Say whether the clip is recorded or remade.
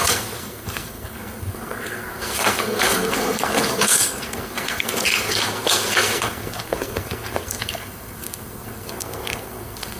remade